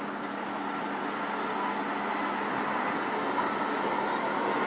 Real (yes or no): yes